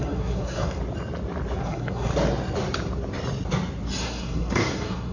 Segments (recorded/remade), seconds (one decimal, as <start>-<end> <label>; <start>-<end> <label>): 0.0-0.8 remade; 0.8-1.6 recorded; 1.6-2.1 remade; 2.1-4.0 recorded; 4.0-5.1 remade